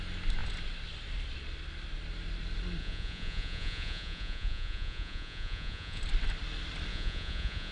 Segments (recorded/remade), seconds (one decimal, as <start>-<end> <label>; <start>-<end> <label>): 0.0-2.8 recorded; 2.8-6.0 remade; 6.0-6.9 recorded; 6.9-7.7 remade